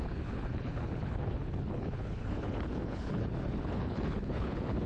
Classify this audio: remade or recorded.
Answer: remade